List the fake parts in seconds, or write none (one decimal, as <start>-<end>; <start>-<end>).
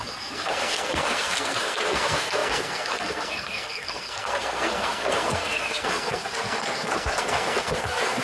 0.0-8.2